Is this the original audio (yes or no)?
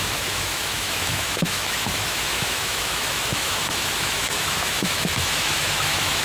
no